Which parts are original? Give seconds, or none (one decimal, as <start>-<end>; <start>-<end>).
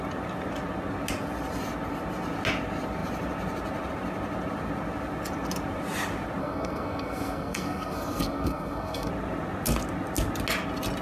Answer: 0.0-6.4; 9.1-11.0